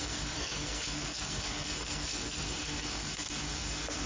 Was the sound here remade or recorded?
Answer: remade